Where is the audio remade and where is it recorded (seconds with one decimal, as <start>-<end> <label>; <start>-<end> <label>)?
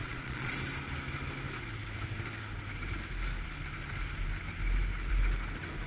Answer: 0.0-0.5 remade; 0.5-5.9 recorded